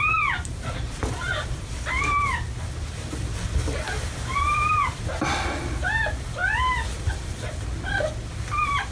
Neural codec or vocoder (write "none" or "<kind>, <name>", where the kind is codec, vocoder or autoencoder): none